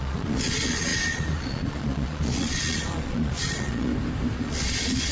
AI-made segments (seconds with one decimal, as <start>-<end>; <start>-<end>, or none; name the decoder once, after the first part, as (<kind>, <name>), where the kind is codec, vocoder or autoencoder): 0.0-3.9 (vocoder, Vocos); 4.4-5.1